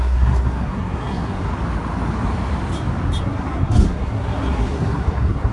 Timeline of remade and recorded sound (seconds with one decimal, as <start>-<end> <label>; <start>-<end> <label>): 0.0-1.5 remade; 1.5-3.2 recorded; 3.2-5.5 remade